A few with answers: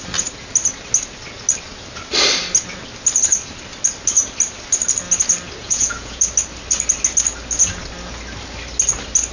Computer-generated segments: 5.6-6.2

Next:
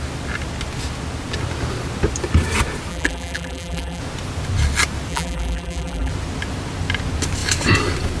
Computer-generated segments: 2.9-4.0; 5.1-6.1